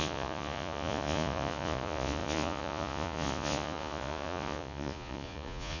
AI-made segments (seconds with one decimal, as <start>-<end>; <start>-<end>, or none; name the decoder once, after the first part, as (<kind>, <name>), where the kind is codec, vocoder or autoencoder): 0.0-5.8 (vocoder, Vocos)